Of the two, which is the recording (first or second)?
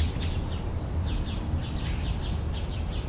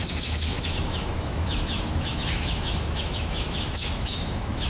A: first